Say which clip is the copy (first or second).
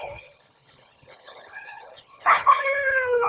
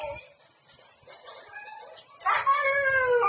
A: first